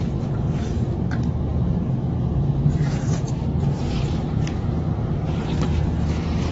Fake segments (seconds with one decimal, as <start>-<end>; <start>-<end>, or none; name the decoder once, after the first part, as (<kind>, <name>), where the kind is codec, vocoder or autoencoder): 1.5-5.4 (vocoder, BigVGAN v2)